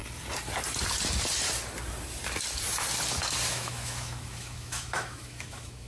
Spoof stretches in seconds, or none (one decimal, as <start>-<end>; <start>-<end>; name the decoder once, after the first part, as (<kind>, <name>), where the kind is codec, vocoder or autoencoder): 3.5-5.9 (autoencoder, DAC-VAE)